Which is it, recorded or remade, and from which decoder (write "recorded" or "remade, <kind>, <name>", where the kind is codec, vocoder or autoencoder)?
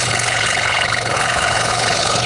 remade, codec, HILCodec